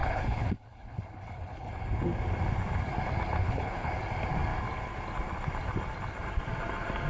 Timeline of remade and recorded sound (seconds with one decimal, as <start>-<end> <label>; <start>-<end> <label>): 0.0-1.7 remade; 1.7-3.4 recorded; 3.4-3.9 remade; 3.9-7.1 recorded